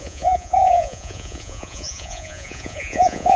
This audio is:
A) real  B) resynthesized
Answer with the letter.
B